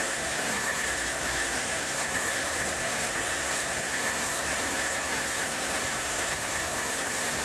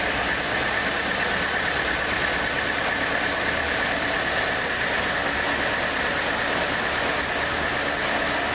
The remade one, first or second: first